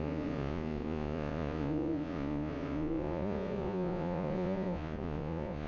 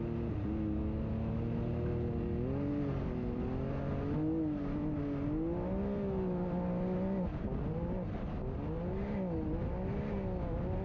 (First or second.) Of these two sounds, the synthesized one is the first